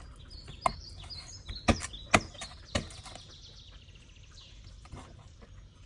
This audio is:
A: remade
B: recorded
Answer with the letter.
B